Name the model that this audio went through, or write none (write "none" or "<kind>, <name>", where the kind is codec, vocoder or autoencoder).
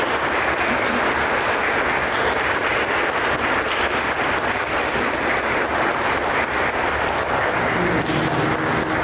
none